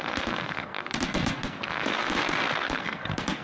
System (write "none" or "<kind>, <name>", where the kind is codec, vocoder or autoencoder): codec, SNAC